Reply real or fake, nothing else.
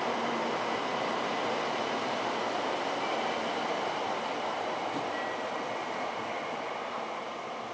real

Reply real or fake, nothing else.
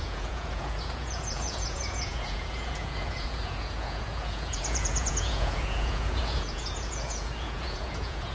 fake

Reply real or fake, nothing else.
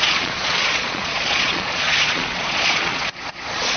fake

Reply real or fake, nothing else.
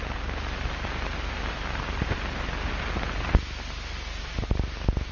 real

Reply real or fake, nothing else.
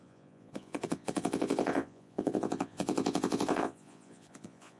fake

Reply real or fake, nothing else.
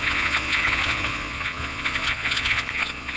fake